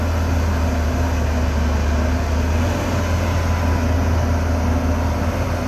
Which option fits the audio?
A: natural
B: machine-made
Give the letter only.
A